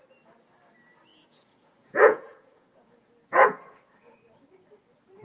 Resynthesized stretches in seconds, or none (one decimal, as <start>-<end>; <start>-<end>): 1.1-4.2